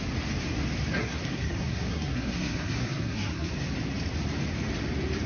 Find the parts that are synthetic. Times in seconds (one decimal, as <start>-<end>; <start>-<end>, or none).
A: 1.0-3.5